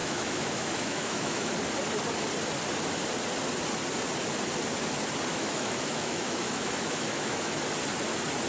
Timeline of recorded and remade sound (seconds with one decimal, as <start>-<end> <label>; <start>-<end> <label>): 0.0-1.5 remade; 1.5-5.3 recorded; 5.3-7.6 remade; 7.6-8.5 recorded